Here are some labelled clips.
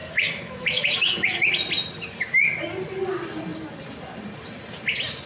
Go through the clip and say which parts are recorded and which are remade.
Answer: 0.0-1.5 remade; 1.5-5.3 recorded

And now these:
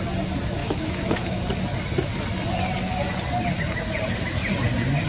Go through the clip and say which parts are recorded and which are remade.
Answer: 0.0-0.6 recorded; 0.6-1.4 remade; 1.4-5.1 recorded

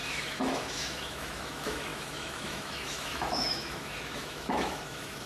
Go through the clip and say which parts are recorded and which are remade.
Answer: 0.0-5.3 remade

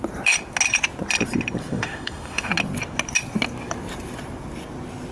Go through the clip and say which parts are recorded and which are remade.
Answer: 0.0-1.7 recorded; 1.7-2.5 remade; 2.5-5.1 recorded

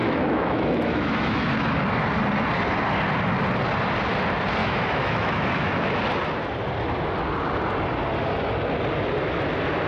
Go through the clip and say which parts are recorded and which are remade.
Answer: 0.0-1.5 remade; 1.5-4.6 recorded; 4.6-6.0 remade; 6.0-9.9 recorded

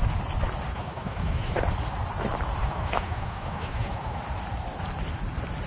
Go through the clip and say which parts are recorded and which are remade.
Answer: 0.0-0.7 recorded; 0.7-1.6 remade; 1.6-2.6 recorded; 2.6-4.2 remade; 4.2-5.7 recorded

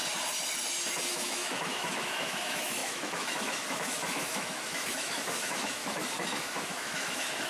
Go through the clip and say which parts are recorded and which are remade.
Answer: 0.0-1.1 recorded; 1.1-7.5 remade

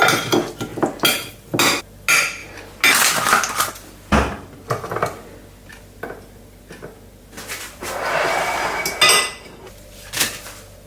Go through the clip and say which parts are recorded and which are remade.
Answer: 0.0-10.9 recorded